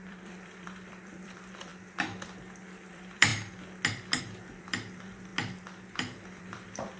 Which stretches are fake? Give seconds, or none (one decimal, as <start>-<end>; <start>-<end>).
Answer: 0.0-1.7; 2.9-3.3; 4.2-5.3; 6.4-7.0